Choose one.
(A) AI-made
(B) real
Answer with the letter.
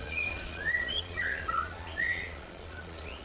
A